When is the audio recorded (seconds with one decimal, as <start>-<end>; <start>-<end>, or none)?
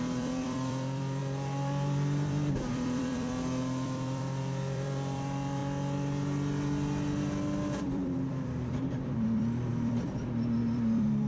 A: 5.6-7.8